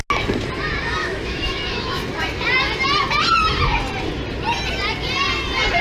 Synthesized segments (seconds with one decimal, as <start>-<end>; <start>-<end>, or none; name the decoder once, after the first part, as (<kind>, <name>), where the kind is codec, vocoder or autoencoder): 1.0-2.0 (autoencoder, DAC-VAE)